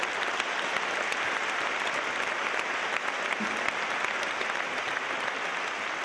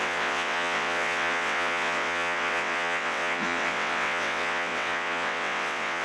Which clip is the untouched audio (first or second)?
first